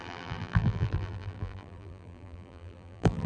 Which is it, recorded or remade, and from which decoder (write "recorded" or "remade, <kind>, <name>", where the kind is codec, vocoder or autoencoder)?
remade, vocoder, BigVGAN v2